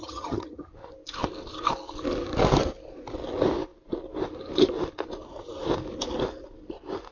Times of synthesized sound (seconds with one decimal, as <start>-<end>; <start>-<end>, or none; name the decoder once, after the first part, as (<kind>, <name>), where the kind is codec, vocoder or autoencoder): 0.0-0.7 (vocoder, HiFi-GAN)